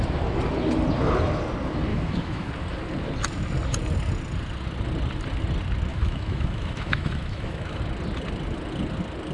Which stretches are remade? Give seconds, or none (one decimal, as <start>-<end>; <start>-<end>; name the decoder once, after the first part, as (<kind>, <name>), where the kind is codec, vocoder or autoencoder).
1.9-2.5 (autoencoder, DAC-VAE); 5.9-7.8